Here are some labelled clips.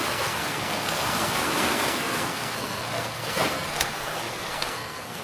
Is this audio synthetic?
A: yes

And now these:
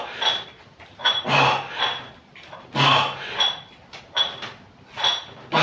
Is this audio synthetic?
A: no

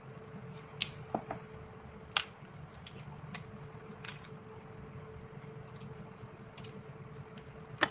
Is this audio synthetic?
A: no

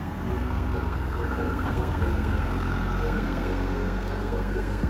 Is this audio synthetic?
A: yes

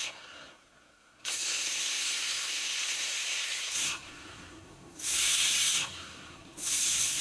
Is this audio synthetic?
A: yes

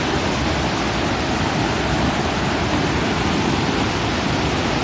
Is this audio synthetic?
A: no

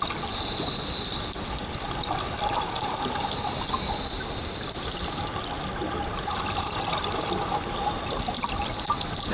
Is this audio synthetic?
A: no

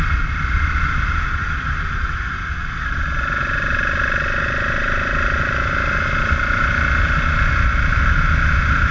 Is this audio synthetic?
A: no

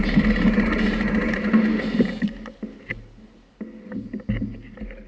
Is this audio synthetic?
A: no